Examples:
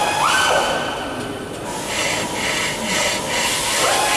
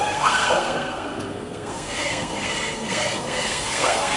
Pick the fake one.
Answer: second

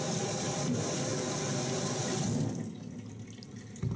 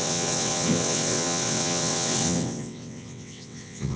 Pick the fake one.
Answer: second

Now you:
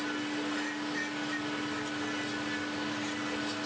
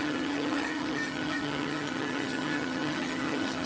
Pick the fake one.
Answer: second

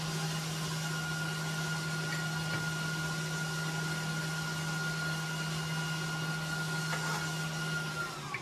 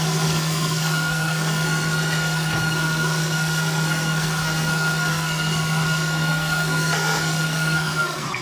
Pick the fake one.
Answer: second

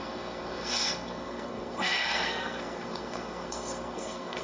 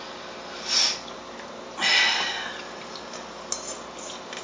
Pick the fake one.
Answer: first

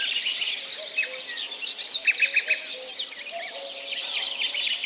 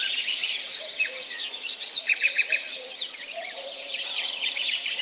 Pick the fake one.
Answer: second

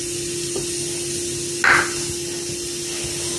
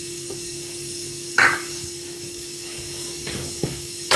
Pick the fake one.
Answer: second